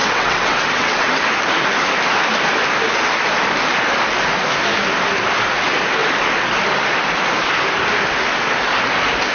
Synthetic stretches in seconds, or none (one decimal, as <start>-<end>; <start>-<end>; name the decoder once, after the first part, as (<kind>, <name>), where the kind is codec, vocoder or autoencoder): 0.0-1.2 (vocoder, WaveNeXt)